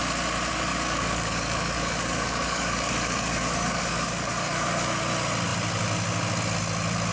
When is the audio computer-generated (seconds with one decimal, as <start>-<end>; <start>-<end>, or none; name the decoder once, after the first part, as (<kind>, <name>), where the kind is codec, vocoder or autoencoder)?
0.7-5.0 (codec, DAC)